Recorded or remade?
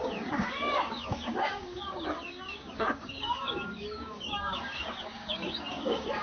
remade